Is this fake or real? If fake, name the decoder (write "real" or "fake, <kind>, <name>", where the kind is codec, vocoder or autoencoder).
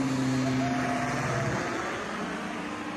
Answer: real